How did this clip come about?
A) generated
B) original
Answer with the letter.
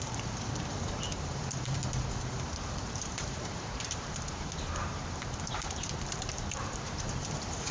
A